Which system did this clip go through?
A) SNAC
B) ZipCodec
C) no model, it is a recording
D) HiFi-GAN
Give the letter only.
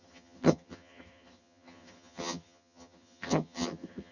D